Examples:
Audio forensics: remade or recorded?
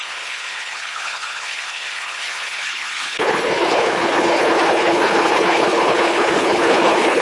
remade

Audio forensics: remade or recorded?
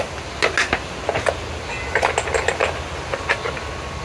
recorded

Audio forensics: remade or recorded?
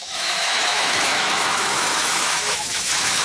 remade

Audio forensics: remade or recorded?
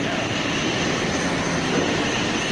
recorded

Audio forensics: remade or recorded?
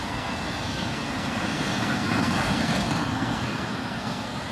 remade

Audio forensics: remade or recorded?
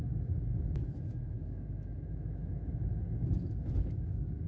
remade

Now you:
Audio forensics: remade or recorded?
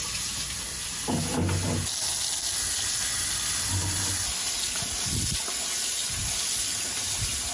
recorded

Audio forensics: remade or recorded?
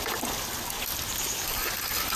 recorded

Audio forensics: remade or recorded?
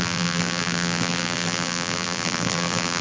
remade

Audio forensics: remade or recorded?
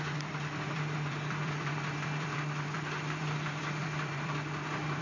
remade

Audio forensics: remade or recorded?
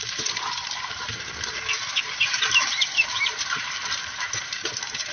remade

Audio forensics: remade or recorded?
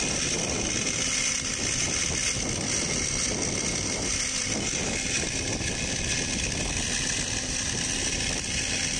recorded